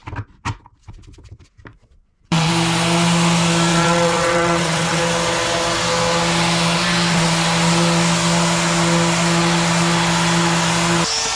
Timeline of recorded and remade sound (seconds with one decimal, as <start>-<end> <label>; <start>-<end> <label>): 0.0-1.7 recorded; 1.7-2.5 remade; 2.5-3.7 recorded; 3.7-5.0 remade; 5.0-11.4 recorded